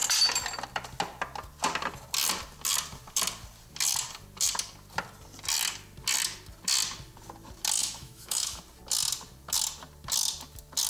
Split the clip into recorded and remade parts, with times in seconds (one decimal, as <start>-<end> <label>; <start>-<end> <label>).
0.0-7.8 recorded; 7.8-8.6 remade; 8.6-10.9 recorded

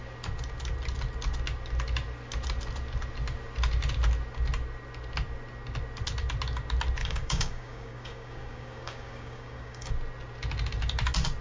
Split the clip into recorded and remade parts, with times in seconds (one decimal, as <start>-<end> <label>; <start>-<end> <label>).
0.0-7.0 recorded; 7.0-9.9 remade; 9.9-11.4 recorded

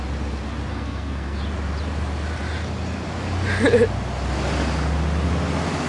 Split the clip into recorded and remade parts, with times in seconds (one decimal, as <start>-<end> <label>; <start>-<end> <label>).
0.0-0.7 recorded; 0.7-1.4 remade; 1.4-5.9 recorded

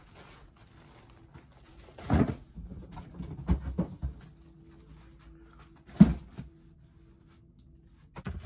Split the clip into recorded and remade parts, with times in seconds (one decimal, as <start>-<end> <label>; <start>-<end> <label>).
0.0-0.5 remade; 0.5-1.7 recorded; 1.7-3.1 remade; 3.1-8.5 recorded